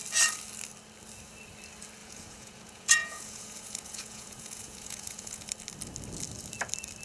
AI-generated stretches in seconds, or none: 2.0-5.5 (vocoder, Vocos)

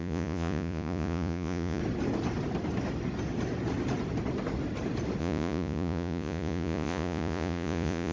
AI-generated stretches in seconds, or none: 0.0-1.8 (vocoder, Vocos); 5.2-8.1

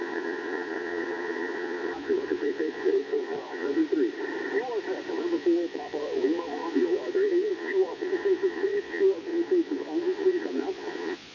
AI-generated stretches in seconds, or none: 0.0-3.8 (vocoder, Vocos); 5.1-11.3

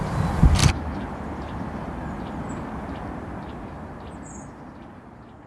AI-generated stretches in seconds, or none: none

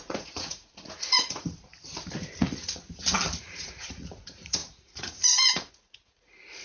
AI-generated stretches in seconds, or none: 0.0-1.7 (vocoder, Vocos); 2.3-2.8; 3.4-6.6

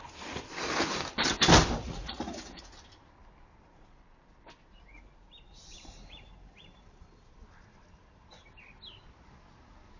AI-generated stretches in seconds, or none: 1.8-2.7 (vocoder, Vocos)

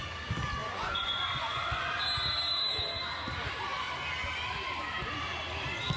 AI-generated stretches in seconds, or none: 0.6-2.0 (vocoder, Vocos)